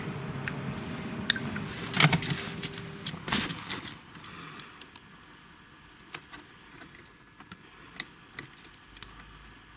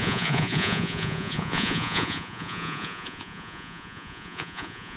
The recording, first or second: first